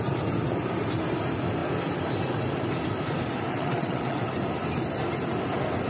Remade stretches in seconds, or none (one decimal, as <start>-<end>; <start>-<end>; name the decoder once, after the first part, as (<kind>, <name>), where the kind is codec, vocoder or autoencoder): 3.5-4.3 (vocoder, WaveNeXt)